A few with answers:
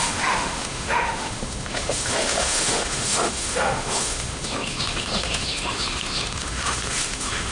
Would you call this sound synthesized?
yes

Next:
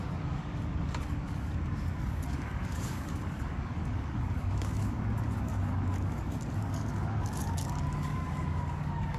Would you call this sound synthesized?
yes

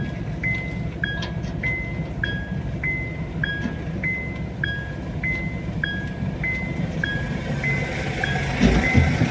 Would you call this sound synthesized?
no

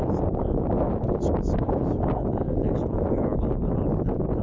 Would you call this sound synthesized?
no